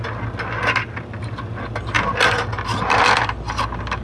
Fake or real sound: real